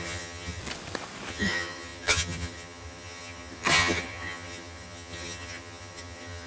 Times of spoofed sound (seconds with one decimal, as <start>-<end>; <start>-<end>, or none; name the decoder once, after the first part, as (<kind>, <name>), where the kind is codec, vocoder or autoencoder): 0.0-0.6 (vocoder, HiFi-GAN); 1.3-6.5